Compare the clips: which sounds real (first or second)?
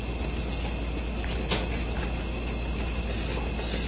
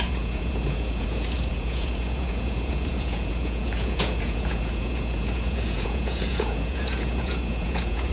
first